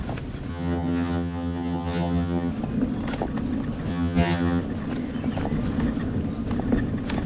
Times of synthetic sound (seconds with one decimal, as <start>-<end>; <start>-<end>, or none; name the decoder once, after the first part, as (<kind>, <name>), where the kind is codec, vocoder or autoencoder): 0.5-2.5 (vocoder, HiFi-GAN); 3.9-4.6